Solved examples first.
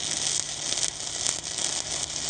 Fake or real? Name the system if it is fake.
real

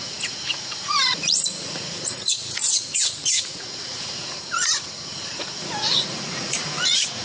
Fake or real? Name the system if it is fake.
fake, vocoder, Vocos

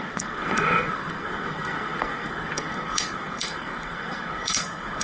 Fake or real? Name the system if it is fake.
fake, codec, SNAC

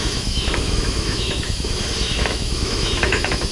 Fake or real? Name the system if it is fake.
fake, autoencoder, DAC-VAE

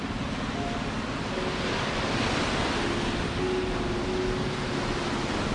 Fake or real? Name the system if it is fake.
real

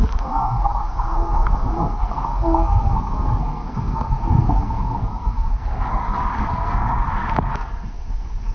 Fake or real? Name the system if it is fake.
fake, codec, SNAC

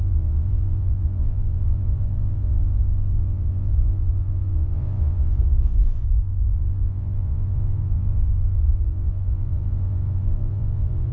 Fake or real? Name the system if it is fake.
fake, vocoder, Vocos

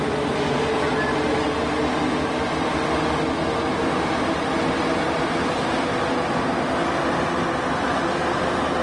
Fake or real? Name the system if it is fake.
real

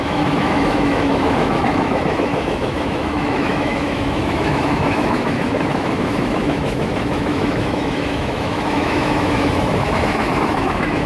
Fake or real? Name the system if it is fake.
fake, autoencoder, DAC-VAE